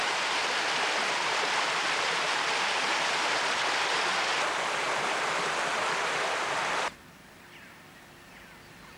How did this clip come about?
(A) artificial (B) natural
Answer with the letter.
A